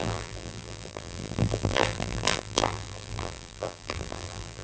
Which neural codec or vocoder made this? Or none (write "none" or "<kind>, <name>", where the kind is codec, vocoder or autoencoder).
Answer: vocoder, BigVGAN v2